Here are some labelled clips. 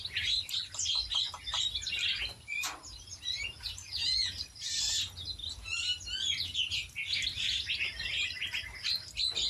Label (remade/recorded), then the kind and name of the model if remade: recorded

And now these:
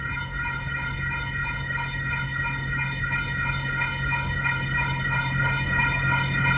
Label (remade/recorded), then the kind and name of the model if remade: remade, codec, HILCodec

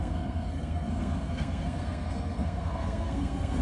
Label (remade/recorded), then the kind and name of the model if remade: remade, codec, SNAC